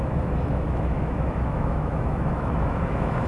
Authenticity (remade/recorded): remade